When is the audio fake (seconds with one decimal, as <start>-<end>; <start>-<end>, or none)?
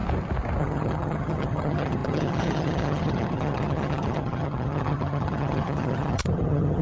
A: 0.6-6.8